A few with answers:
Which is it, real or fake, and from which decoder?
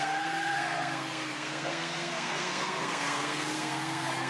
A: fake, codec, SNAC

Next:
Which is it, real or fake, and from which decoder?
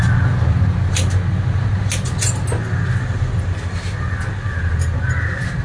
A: real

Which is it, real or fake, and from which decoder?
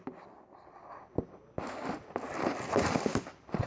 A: real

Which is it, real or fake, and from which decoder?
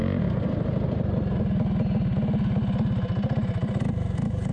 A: real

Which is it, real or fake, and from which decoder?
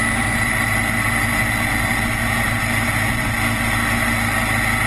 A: real